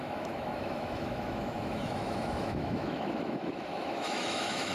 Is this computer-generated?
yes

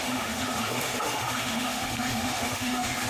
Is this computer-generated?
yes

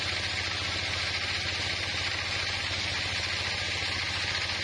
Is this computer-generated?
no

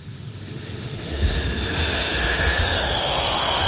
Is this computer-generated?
yes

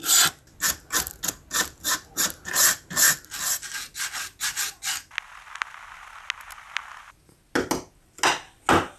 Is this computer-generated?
no